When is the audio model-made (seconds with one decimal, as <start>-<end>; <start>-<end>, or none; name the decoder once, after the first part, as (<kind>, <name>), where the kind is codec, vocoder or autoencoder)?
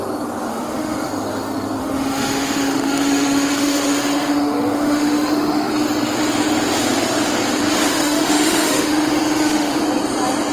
0.5-1.1 (autoencoder, DAC-VAE); 1.8-5.7; 7.9-9.8